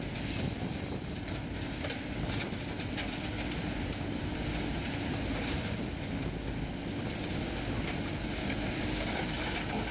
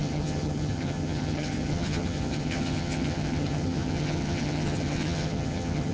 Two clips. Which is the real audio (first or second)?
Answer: first